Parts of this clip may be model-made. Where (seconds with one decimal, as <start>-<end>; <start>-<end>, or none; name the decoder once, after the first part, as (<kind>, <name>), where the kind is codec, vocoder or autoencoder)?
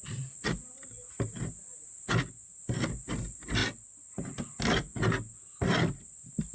none